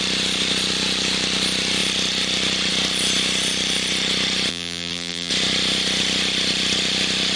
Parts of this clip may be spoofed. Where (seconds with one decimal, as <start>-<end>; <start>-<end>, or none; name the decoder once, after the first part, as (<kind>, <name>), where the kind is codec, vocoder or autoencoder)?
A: 4.5-5.3 (vocoder, BigVGAN v2)